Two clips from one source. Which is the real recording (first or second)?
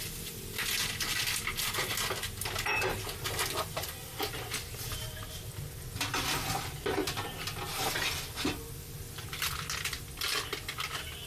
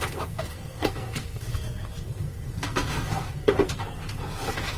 first